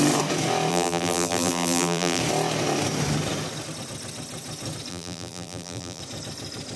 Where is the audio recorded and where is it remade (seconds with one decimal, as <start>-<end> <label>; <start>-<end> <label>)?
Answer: 0.0-0.7 recorded; 0.7-2.2 remade; 2.2-4.9 recorded; 4.9-6.0 remade; 6.0-6.8 recorded